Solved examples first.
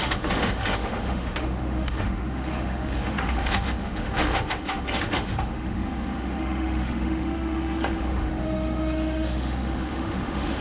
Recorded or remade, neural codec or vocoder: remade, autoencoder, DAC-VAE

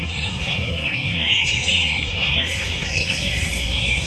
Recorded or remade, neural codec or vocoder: remade, codec, SNAC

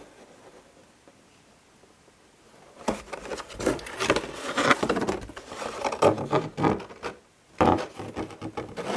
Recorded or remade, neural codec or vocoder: recorded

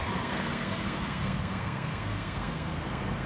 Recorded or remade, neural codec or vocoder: remade, codec, SNAC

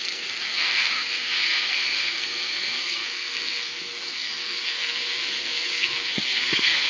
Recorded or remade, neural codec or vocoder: remade, codec, SNAC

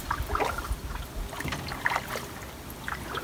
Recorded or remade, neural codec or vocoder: recorded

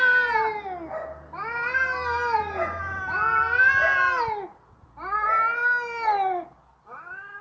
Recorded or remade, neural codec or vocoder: recorded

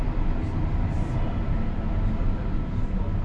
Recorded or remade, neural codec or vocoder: recorded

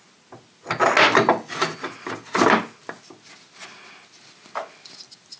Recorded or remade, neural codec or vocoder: recorded